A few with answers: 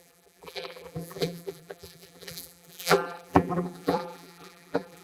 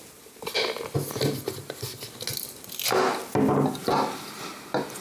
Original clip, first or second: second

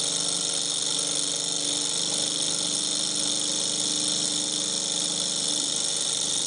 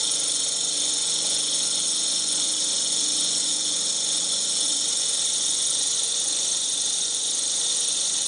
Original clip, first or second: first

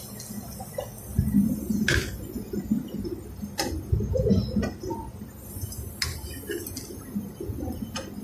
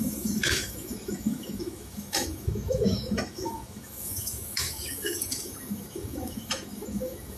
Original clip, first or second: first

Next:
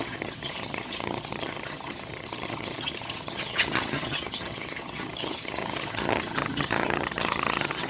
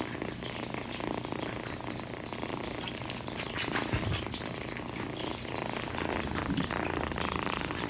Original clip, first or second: second